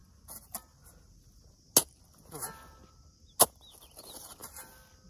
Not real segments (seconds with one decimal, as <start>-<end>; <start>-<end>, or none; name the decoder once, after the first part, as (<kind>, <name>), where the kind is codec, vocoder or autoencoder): none